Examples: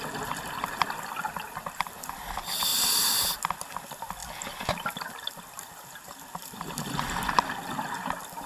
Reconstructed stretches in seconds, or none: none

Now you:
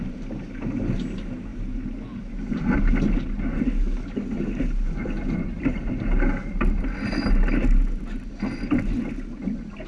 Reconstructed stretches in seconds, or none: none

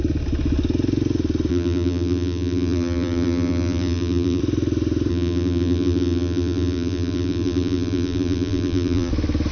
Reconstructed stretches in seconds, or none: 1.5-4.4 (vocoder, BigVGAN v2); 5.1-9.1

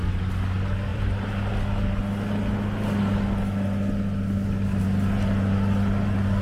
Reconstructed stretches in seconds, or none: 0.9-1.5 (vocoder, BigVGAN v2)

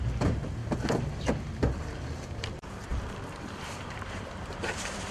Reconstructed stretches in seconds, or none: 0.0-0.6 (vocoder, BigVGAN v2); 2.5-5.1

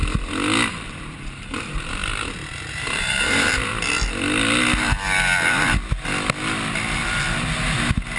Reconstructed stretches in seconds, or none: 0.7-2.0 (vocoder, BigVGAN v2); 2.7-3.7

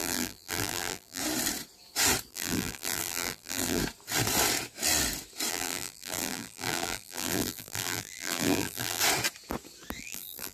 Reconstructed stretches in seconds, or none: 0.0-1.2 (vocoder, BigVGAN v2); 2.3-3.8; 5.5-9.0; 10.0-10.5

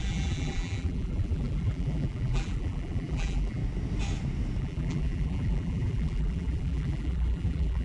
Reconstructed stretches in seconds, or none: 0.0-3.6 (vocoder, BigVGAN v2); 4.6-7.8